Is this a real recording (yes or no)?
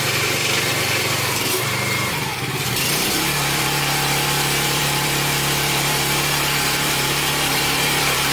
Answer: no